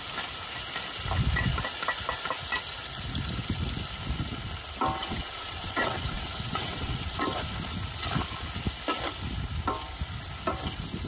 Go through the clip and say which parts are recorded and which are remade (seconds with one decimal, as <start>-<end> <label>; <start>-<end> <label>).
0.0-5.0 recorded; 5.0-7.2 remade; 7.2-11.1 recorded